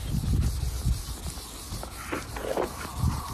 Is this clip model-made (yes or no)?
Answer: no